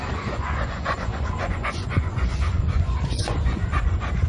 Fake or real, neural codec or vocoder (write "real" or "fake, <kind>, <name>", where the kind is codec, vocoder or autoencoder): fake, vocoder, Vocos